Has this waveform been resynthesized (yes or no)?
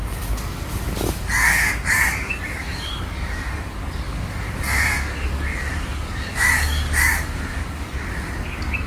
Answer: yes